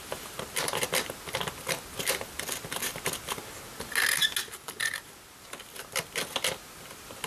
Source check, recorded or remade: recorded